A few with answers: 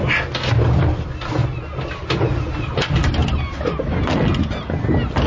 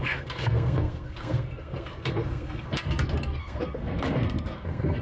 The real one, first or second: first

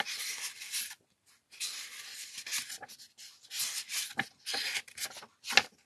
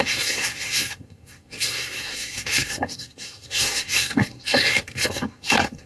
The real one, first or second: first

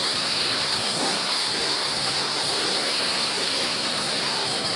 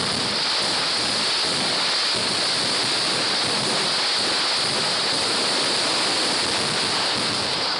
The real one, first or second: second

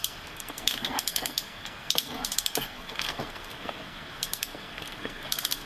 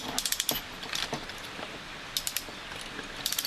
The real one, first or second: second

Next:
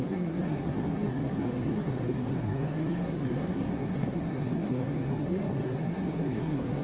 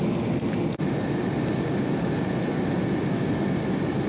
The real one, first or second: second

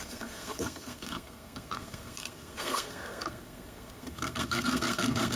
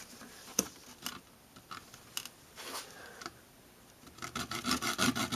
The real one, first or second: second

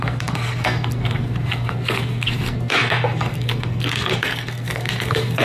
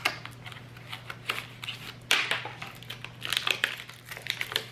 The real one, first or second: second